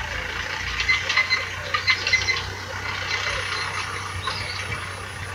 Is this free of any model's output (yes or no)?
yes